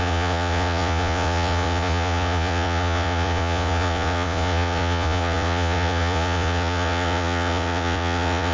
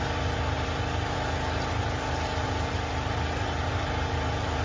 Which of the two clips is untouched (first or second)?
second